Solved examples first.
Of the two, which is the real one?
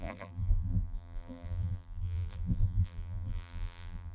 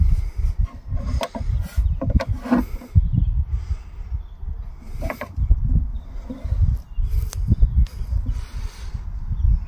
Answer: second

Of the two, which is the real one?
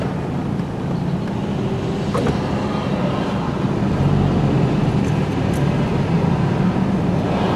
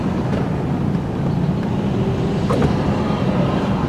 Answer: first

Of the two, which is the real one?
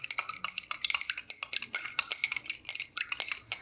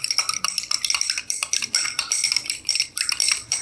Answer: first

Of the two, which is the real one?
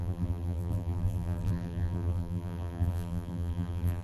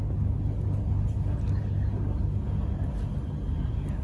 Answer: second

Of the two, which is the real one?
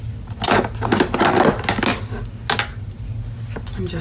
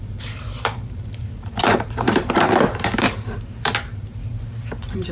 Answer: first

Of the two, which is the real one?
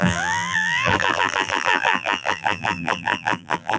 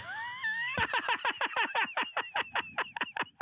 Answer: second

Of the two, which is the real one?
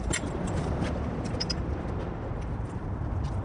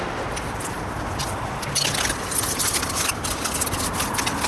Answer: second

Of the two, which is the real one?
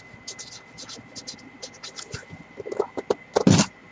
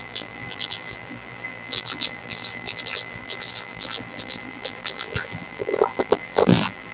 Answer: first